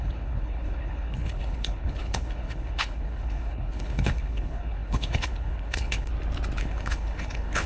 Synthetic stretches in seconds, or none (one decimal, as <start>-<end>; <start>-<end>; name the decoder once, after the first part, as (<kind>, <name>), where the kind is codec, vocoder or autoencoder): 0.0-6.1 (codec, HILCodec); 6.6-7.7